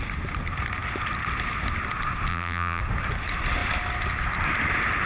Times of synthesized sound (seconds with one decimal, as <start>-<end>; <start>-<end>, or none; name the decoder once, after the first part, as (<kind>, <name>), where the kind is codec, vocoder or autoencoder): 2.3-2.8 (vocoder, BigVGAN v2)